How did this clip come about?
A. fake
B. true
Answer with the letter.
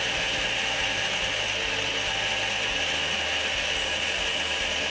B